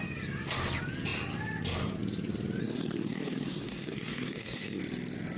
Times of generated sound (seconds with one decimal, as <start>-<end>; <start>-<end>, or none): 2.6-4.8